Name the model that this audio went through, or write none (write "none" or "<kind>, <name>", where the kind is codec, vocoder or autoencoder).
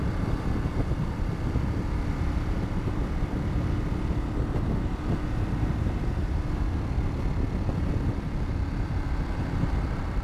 vocoder, BigVGAN v2